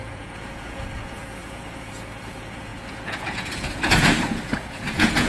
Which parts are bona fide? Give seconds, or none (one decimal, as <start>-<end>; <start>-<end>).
none